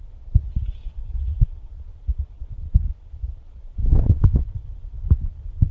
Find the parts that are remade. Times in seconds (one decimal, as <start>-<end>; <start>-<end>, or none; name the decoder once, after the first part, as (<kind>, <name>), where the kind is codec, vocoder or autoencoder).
0.8-1.7 (vocoder, WaveNeXt); 3.8-4.7